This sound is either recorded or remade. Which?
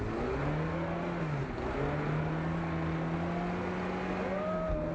recorded